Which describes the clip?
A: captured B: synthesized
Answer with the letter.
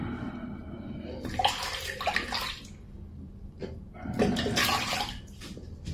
A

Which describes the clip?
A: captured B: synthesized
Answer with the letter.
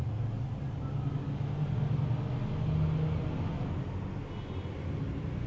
A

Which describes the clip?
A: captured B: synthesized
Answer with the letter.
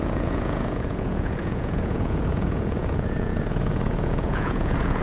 B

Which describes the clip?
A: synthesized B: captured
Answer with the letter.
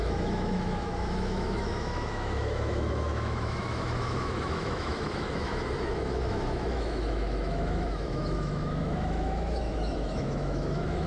A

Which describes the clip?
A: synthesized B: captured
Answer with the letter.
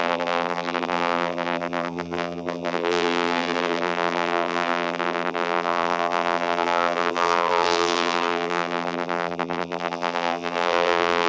A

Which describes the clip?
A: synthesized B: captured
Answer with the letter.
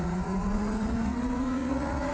A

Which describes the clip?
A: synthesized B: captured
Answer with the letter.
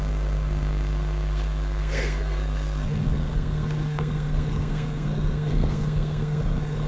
A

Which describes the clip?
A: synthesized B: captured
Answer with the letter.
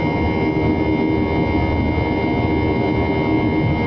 B